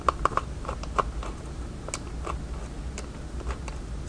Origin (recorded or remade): recorded